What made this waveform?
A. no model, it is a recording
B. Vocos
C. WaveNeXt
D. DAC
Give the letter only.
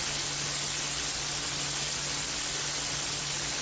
A